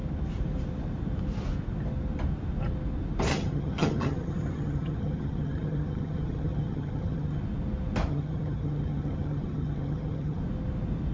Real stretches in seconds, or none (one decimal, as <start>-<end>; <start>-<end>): 0.0-3.3; 7.4-8.1; 10.4-11.1